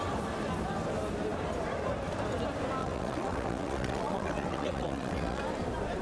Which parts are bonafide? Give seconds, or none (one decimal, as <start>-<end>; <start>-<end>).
0.0-2.8; 5.4-6.0